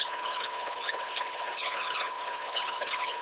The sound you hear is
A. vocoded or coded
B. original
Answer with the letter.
A